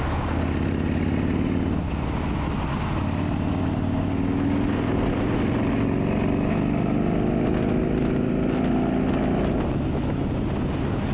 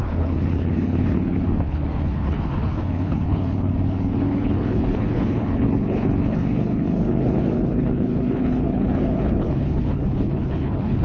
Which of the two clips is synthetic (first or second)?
second